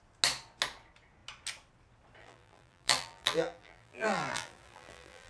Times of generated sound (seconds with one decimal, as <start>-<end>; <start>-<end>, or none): 2.2-5.3